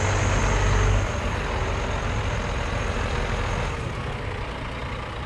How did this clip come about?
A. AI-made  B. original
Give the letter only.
B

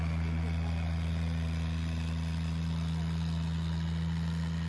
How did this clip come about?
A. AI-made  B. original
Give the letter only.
B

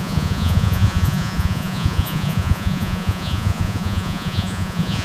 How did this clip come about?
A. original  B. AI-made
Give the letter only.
B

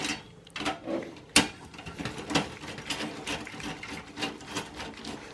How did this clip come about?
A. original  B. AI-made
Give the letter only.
A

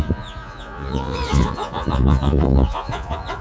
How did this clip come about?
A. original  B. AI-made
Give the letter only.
B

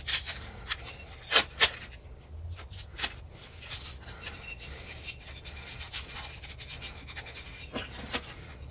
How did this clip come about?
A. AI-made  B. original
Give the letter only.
B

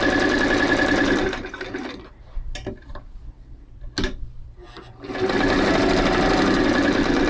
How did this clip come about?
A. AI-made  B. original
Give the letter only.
B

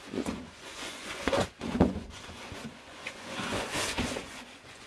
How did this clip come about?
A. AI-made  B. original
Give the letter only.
A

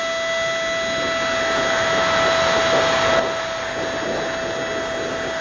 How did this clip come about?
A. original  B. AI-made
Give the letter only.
A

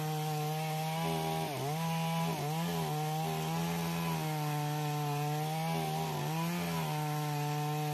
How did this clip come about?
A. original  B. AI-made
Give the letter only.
A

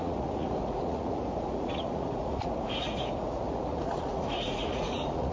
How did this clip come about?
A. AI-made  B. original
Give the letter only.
A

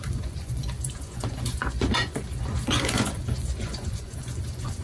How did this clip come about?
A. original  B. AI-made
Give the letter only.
B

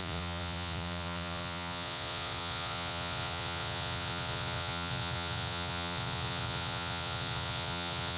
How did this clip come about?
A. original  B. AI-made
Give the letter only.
B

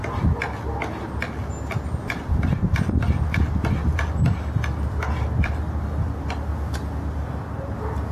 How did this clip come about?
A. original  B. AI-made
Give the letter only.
A